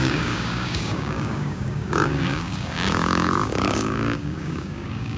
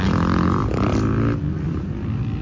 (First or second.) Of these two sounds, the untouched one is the second